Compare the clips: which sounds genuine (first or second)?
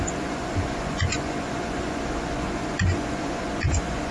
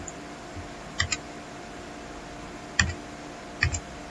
second